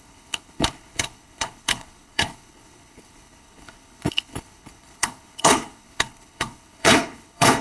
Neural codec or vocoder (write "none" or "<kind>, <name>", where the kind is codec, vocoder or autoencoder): codec, HILCodec